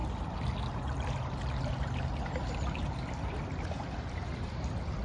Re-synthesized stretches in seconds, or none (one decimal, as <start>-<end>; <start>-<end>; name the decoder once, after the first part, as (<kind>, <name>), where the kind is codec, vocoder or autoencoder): none